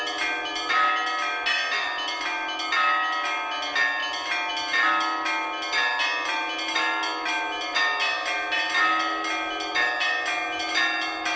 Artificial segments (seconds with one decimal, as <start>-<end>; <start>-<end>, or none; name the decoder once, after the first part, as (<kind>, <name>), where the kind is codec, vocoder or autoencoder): none

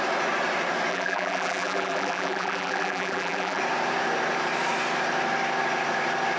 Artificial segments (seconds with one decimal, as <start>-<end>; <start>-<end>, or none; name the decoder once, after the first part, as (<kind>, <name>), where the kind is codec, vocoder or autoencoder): 0.9-3.6 (vocoder, BigVGAN v2)

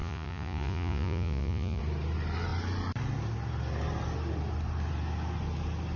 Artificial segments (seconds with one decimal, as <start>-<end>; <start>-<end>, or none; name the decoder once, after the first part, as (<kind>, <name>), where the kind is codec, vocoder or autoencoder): 0.0-1.8 (vocoder, Vocos)

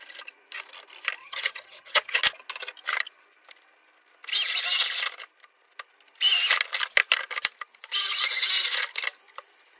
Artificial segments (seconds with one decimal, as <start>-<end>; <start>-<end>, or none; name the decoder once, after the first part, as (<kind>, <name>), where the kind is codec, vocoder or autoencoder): 1.2-2.2 (vocoder, HiFi-GAN)

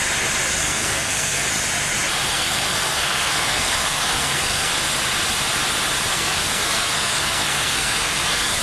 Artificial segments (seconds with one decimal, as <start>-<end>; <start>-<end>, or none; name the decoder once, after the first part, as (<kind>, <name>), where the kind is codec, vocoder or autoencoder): 0.6-1.5 (codec, SNAC); 2.3-4.7; 6.1-8.6

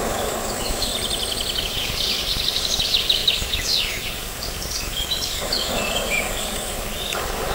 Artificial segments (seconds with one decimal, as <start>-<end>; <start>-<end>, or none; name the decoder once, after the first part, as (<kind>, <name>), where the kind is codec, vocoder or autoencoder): 0.0-0.9 (codec, DAC); 1.6-7.5

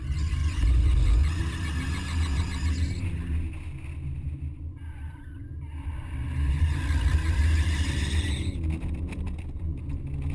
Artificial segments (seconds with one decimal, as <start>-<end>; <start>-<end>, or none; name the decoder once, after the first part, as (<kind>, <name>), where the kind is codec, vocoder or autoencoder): 0.4-1.4 (vocoder, Vocos)